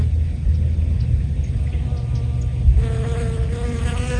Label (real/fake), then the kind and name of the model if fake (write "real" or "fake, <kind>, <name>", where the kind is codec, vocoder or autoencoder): real